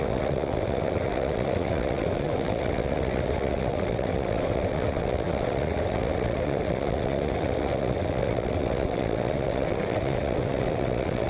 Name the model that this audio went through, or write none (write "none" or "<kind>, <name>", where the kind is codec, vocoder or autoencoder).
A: vocoder, WaveNeXt